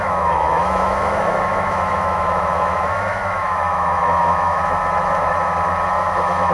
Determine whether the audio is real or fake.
fake